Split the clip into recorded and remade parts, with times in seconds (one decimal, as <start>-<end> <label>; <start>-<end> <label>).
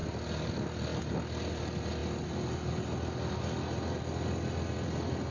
0.0-5.3 recorded